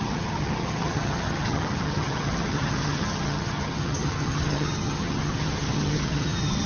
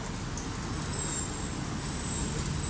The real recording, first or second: second